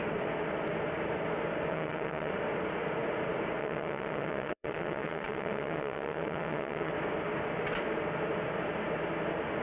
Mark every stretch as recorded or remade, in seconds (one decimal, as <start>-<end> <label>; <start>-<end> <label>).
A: 0.0-1.7 recorded; 1.7-2.3 remade; 2.3-3.6 recorded; 3.6-6.9 remade; 6.9-9.6 recorded